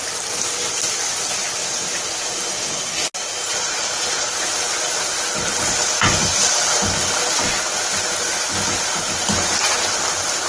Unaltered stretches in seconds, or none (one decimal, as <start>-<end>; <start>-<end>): 0.0-3.5; 4.3-10.5